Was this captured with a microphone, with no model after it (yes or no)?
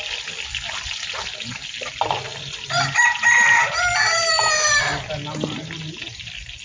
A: yes